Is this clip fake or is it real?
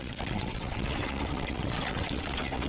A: fake